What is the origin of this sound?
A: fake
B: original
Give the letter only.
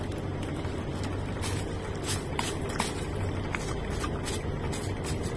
B